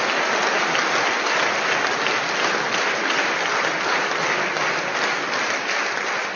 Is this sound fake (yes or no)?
no